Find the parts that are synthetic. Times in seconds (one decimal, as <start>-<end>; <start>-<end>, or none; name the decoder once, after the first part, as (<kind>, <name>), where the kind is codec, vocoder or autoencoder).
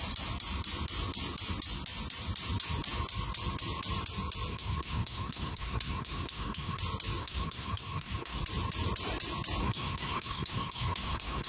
4.5-6.8 (codec, SNAC); 7.2-8.4; 9.6-11.5